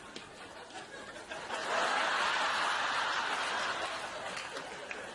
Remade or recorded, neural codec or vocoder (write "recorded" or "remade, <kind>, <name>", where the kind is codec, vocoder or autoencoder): recorded